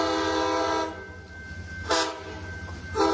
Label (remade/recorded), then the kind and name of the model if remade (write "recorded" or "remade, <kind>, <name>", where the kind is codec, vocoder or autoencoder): recorded